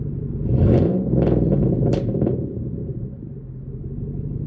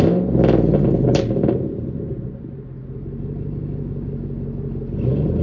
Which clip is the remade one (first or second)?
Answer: first